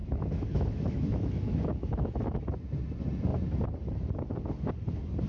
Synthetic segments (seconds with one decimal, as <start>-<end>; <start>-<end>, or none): 0.0-2.4